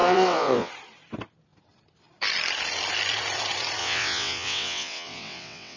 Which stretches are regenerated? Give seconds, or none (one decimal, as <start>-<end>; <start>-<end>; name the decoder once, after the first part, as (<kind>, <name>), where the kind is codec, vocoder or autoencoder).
0.0-0.7 (vocoder, WaveNeXt); 3.8-5.8

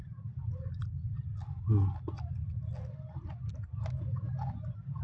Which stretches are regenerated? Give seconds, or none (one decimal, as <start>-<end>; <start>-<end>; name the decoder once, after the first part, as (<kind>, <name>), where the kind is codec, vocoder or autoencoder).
none

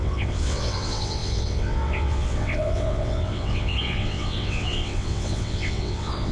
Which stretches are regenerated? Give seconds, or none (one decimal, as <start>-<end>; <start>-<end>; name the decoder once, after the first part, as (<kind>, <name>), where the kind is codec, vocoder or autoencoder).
0.0-6.3 (vocoder, WaveNeXt)

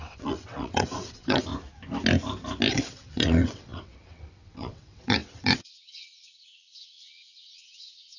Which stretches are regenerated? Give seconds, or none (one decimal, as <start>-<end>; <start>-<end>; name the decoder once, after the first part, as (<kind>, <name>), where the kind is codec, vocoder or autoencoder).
0.0-1.5 (vocoder, WaveNeXt); 2.7-8.2

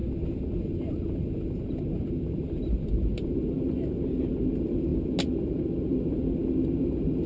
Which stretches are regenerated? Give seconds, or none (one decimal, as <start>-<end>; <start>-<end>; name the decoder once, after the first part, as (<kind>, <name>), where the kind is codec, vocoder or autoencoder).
none

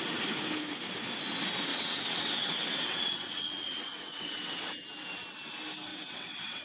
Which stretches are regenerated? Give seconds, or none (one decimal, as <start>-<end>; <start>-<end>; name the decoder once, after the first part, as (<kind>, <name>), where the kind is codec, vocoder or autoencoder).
1.7-4.6 (vocoder, WaveNeXt); 5.9-6.6